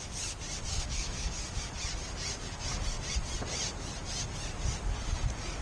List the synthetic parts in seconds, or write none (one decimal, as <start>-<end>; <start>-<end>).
0.7-1.3